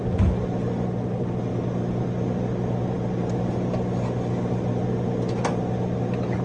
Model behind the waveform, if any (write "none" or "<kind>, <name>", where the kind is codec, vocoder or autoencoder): none